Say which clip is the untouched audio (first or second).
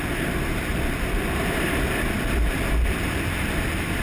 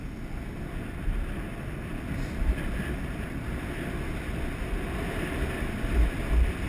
second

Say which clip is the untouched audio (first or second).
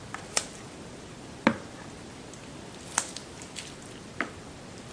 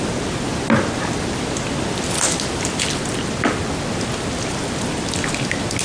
second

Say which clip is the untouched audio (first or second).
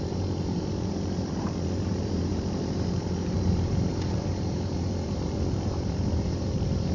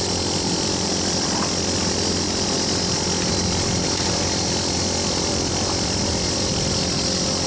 second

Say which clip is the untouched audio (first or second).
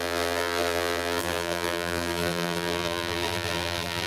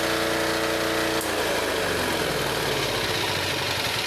second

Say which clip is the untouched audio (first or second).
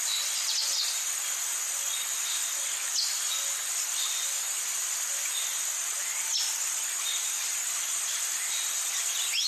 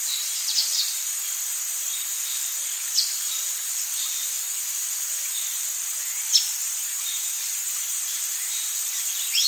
first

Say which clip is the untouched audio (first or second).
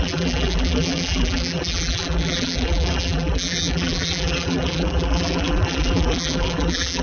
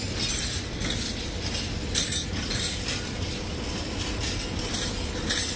second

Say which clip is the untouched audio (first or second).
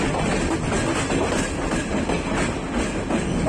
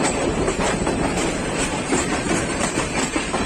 first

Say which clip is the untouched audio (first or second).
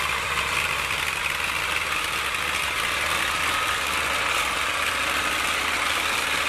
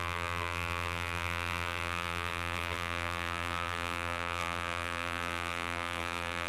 first